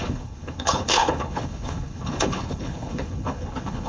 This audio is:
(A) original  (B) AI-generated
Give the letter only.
B